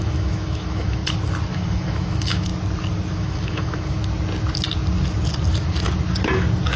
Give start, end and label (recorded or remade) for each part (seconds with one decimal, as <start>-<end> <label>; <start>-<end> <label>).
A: 0.0-1.0 remade; 1.0-1.5 recorded; 1.5-2.5 remade; 2.5-3.1 recorded; 3.1-4.0 remade; 4.0-6.8 recorded